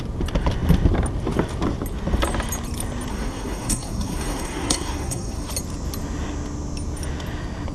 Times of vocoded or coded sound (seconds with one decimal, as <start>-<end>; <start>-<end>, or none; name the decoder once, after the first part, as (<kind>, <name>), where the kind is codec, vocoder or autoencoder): 3.1-5.5 (codec, SNAC)